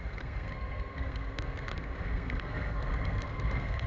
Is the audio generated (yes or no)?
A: yes